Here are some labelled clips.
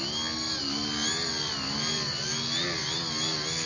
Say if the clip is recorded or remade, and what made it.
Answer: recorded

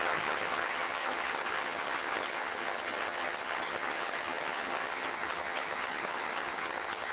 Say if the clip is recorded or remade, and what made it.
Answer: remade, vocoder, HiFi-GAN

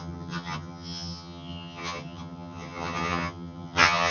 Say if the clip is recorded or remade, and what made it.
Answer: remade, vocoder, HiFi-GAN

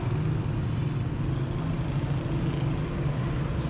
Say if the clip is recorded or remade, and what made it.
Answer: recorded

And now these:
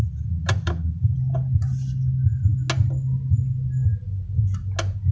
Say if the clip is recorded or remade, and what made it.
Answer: recorded